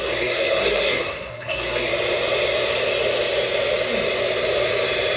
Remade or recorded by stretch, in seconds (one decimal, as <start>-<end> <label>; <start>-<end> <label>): 0.0-1.9 remade; 1.9-5.2 recorded